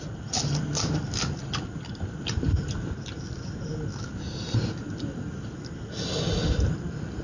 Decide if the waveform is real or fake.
real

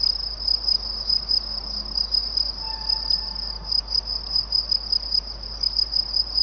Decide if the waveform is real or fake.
real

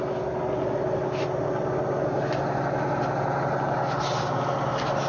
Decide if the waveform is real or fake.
real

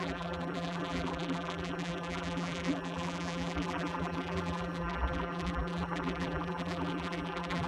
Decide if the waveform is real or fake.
fake